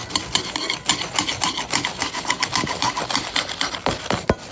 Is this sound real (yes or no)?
yes